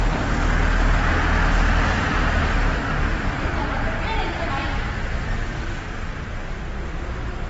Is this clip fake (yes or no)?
no